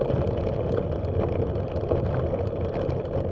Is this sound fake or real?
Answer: real